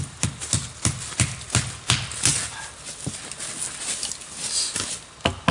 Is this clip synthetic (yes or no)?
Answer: no